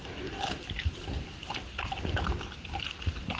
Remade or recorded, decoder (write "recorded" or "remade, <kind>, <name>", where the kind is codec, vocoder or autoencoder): recorded